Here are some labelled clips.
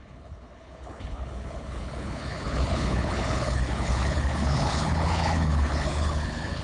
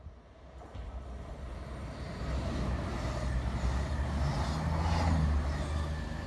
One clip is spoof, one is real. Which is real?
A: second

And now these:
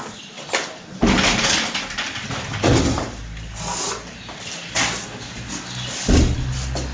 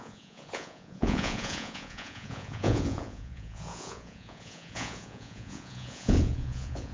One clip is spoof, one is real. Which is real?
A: first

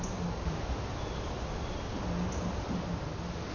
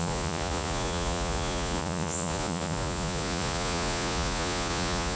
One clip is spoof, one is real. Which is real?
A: first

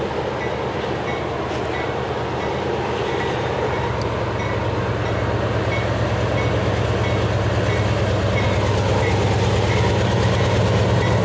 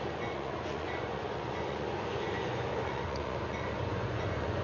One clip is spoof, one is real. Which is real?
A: first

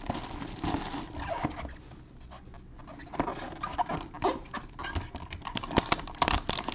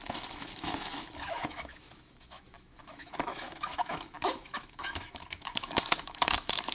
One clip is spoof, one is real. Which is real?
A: first